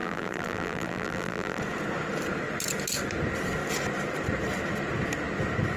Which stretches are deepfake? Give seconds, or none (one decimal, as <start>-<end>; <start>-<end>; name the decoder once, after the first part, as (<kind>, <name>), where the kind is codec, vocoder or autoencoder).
0.0-1.6 (vocoder, BigVGAN v2)